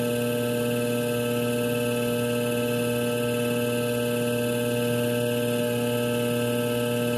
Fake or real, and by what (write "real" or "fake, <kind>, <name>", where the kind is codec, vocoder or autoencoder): real